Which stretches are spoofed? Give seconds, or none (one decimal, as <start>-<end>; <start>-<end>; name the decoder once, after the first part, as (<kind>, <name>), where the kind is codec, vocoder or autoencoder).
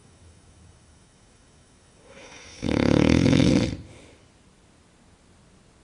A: 0.0-3.5 (autoencoder, DAC-VAE)